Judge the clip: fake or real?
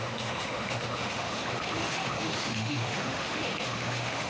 fake